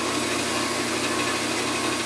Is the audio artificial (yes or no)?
no